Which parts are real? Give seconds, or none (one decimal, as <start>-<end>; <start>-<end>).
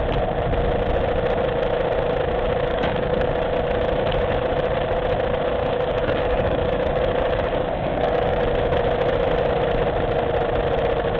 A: 0.0-2.7; 3.3-5.6; 8.4-11.2